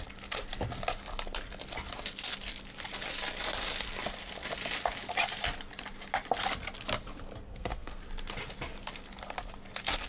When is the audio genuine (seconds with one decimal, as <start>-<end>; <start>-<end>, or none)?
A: 0.0-7.5; 8.0-10.1

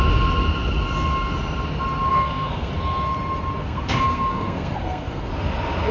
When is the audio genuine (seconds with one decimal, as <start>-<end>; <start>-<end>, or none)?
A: 0.0-2.1; 2.7-3.6; 5.3-5.9